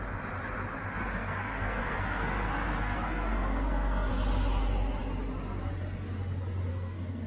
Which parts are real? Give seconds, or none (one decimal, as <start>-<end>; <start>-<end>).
0.0-1.0; 4.1-6.7